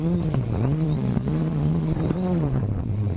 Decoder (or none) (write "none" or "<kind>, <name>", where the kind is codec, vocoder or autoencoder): vocoder, Vocos